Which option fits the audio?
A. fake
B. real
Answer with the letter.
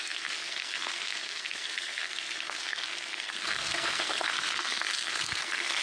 A